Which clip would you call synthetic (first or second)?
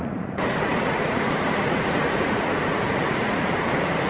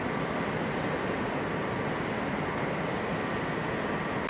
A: first